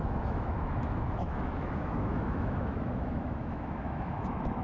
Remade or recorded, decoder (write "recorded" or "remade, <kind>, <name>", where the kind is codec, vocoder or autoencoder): remade, autoencoder, DAC-VAE